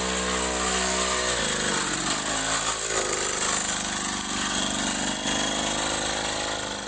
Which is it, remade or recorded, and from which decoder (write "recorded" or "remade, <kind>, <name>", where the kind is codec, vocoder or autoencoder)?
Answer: recorded